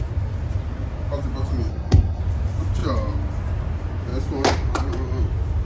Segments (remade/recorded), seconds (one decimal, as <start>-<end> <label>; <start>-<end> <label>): 0.0-1.7 recorded; 1.7-2.2 remade; 2.2-5.6 recorded